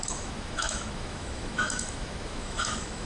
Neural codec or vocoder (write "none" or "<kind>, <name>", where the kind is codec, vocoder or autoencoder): autoencoder, DAC-VAE